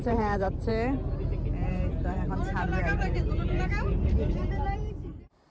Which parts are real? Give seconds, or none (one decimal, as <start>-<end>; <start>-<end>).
0.7-1.7; 2.7-4.3